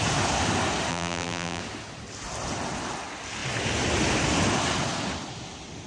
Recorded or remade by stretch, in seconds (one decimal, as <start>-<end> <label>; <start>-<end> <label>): 0.0-0.9 recorded; 0.9-1.6 remade; 1.6-5.9 recorded